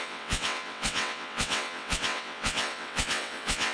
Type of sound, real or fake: fake